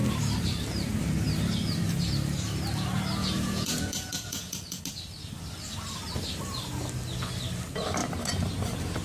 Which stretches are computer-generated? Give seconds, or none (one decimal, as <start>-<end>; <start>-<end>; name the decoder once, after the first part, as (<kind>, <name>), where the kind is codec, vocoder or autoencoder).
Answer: 3.2-4.8 (vocoder, Vocos)